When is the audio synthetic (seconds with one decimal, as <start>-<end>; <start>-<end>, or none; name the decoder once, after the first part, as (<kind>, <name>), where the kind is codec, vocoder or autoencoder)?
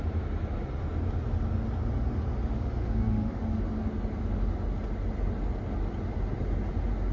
2.5-3.6 (autoencoder, DAC-VAE)